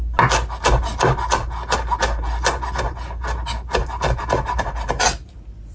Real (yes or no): yes